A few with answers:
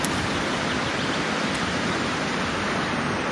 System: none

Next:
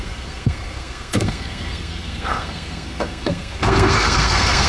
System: codec, SNAC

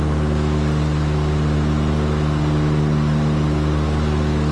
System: none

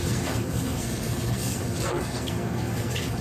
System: codec, SNAC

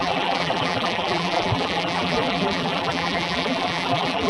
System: vocoder, BigVGAN v2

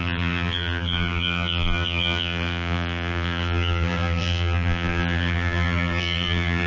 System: vocoder, BigVGAN v2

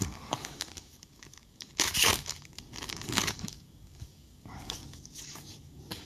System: codec, DAC